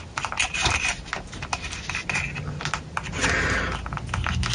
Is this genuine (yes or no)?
yes